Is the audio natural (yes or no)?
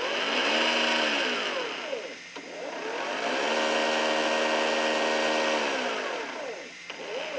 yes